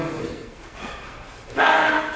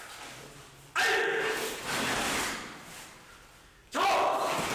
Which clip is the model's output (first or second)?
first